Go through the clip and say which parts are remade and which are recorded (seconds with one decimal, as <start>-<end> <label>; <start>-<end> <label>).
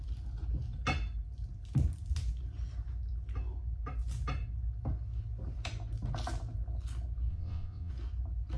0.0-7.3 recorded; 7.3-7.9 remade; 7.9-8.6 recorded